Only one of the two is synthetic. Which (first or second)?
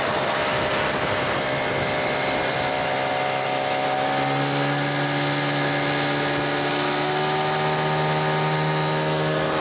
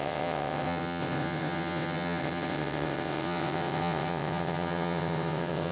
second